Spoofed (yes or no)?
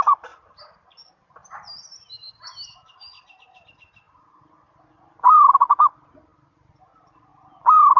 no